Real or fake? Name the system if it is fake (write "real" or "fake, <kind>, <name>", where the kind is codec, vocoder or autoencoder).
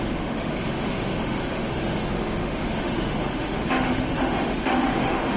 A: fake, autoencoder, DAC-VAE